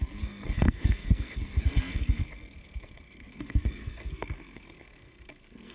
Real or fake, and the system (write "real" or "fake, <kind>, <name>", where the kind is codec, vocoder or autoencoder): fake, codec, SNAC